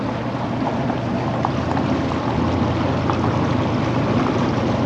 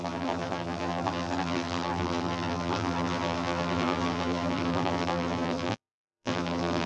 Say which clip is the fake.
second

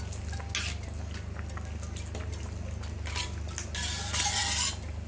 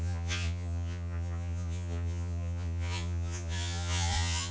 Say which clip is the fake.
second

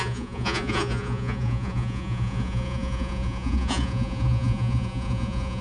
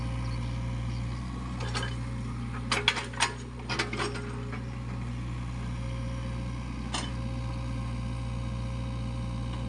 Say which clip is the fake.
first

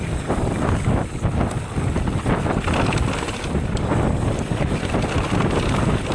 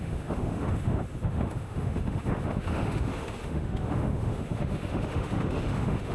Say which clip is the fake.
second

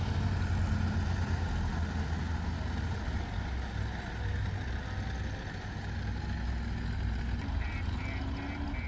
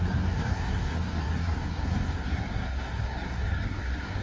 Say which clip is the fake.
second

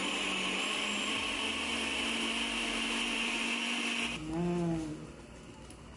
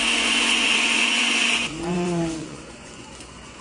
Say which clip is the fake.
second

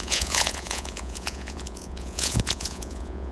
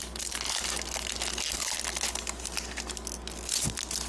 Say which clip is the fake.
first